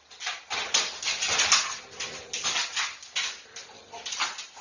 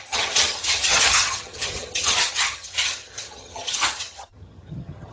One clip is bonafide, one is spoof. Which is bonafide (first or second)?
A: first